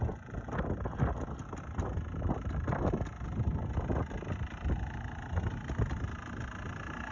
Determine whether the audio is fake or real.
real